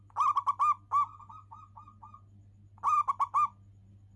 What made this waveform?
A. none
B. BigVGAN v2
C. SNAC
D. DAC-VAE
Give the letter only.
A